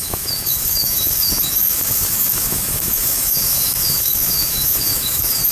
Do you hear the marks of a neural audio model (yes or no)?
yes